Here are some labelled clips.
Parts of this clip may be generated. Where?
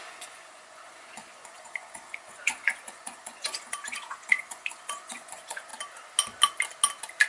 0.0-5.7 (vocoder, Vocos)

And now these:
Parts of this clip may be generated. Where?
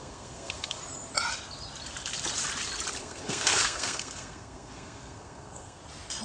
0.0-0.8 (codec, SNAC); 3.0-5.8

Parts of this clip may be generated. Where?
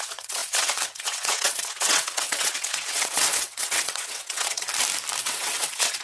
0.0-4.7 (vocoder, WaveNeXt); 5.2-6.0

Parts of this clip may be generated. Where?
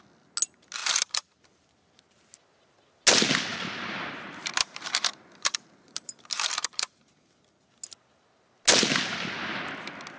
0.8-2.0 (vocoder, BigVGAN v2); 3.5-7.1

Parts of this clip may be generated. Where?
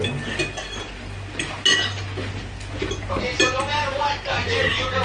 none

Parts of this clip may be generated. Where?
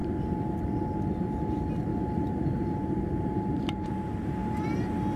1.9-3.9 (vocoder, BigVGAN v2)